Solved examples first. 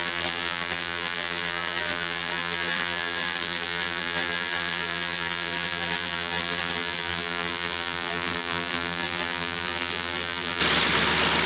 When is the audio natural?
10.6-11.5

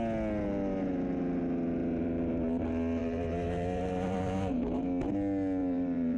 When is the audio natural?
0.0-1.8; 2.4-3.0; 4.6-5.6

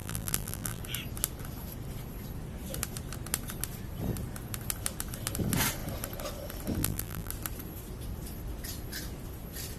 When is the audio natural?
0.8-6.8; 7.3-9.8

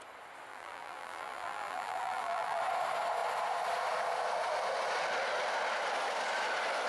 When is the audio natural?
0.0-0.5; 2.6-6.9

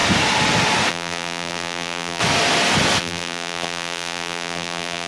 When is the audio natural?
0.0-0.9; 2.2-3.0

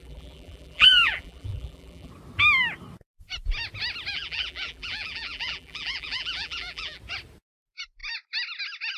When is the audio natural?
2.1-4.1; 7.0-9.0

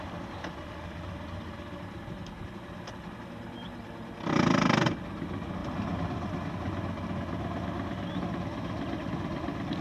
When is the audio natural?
0.0-5.6; 6.5-9.8